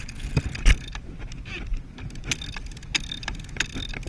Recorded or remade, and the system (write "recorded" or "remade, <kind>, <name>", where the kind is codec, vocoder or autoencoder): recorded